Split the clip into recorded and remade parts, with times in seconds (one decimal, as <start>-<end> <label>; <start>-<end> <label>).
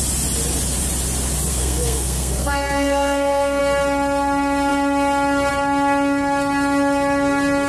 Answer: 0.0-1.5 recorded; 1.5-3.6 remade; 3.6-7.7 recorded